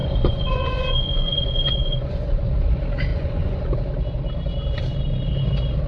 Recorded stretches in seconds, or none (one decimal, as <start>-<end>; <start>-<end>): 2.4-3.1; 3.6-5.9